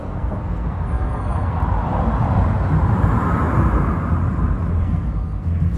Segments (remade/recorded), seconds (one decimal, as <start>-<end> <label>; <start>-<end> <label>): 0.0-1.6 remade; 1.6-4.7 recorded; 4.7-5.8 remade